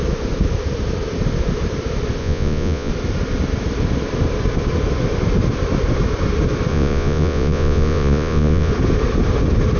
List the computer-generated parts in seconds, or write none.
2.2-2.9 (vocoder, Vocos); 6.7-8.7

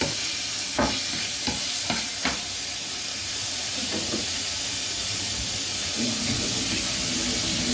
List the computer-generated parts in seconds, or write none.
3.1-5.2 (vocoder, Vocos); 5.7-6.5

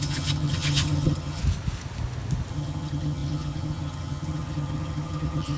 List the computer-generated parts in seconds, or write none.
0.0-1.4 (vocoder, HiFi-GAN); 2.5-5.6

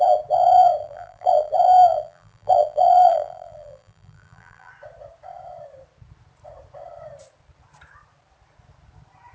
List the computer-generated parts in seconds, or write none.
0.8-1.5 (vocoder, BigVGAN v2); 1.9-4.7